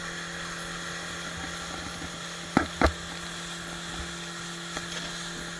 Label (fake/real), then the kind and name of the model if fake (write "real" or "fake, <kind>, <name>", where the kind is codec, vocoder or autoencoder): real